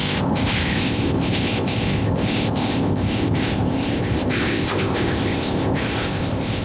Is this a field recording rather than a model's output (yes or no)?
no